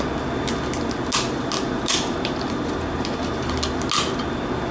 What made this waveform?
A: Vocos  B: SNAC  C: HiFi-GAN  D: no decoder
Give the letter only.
D